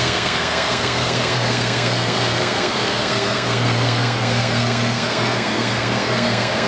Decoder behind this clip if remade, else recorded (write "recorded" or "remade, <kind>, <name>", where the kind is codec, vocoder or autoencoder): remade, codec, SNAC